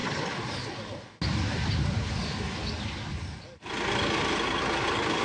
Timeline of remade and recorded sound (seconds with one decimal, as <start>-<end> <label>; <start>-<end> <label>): 0.0-5.2 recorded

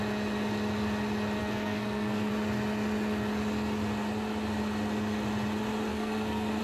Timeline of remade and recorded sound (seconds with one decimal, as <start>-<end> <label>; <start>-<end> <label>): 0.0-1.4 recorded; 1.4-2.3 remade; 2.3-5.9 recorded; 5.9-6.6 remade

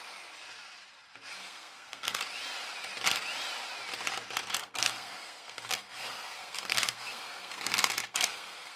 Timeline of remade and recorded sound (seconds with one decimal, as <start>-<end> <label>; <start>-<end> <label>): 0.0-1.4 recorded; 1.4-2.2 remade; 2.2-4.6 recorded; 4.6-8.8 remade

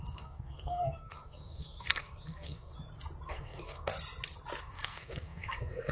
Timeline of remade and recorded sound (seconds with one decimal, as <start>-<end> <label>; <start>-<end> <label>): 0.0-2.7 remade; 2.7-3.3 recorded; 3.3-3.9 remade; 3.9-4.6 recorded; 4.6-5.9 remade